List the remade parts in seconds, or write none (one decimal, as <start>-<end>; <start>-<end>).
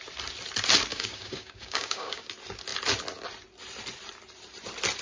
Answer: 0.9-2.3